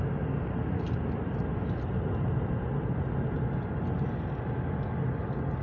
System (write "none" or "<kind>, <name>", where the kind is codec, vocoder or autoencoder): none